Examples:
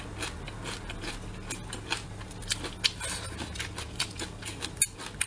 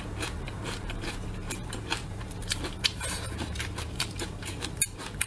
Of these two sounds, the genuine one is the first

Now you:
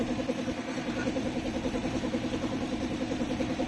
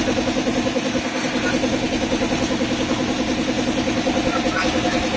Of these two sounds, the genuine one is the second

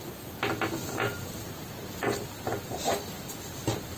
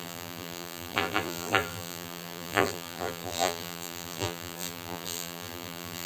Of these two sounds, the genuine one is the first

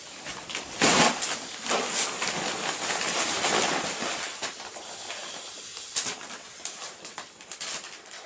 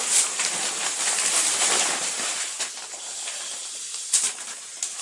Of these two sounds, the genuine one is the first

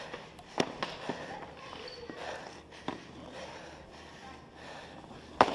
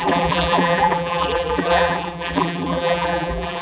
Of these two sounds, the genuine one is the first